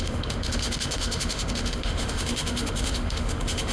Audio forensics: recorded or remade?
remade